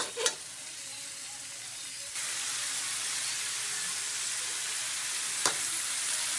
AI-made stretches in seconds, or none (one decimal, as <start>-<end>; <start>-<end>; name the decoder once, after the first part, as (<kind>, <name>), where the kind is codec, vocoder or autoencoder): none